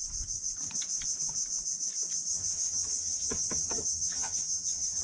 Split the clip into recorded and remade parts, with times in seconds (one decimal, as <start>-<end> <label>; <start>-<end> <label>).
0.0-2.3 recorded; 2.3-5.0 remade